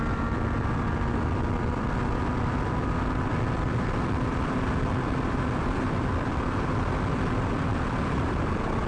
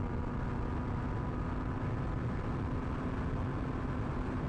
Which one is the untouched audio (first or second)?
second